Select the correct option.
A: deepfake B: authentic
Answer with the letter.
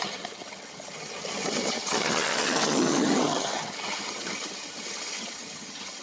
A